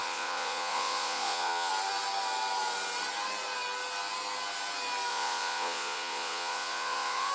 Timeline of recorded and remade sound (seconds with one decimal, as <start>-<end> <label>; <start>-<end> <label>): 0.0-1.7 remade; 1.7-5.1 recorded; 5.1-7.3 remade